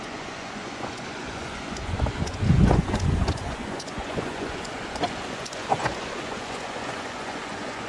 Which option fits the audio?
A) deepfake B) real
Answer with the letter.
A